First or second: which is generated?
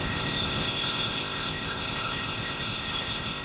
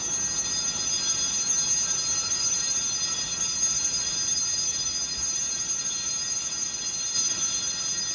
first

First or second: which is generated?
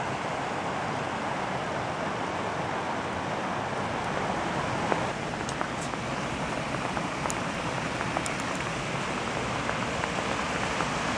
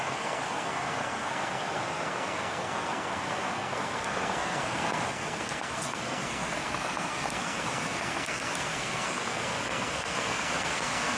second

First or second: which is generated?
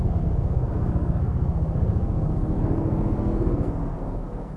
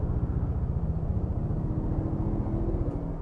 first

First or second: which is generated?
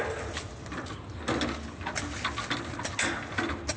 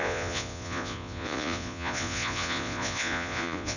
second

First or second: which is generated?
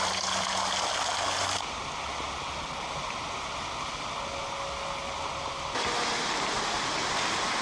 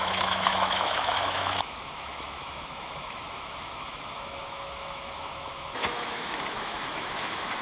second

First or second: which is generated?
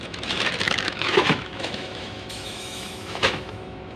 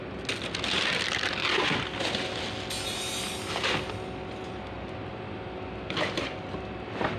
first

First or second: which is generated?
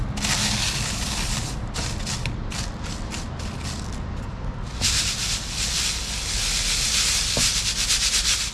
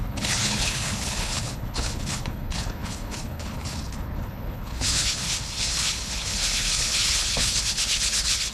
second